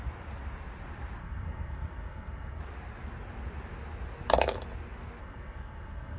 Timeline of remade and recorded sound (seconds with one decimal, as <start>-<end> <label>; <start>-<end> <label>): 0.0-1.2 recorded; 1.2-2.6 remade; 2.6-5.2 recorded; 5.2-6.2 remade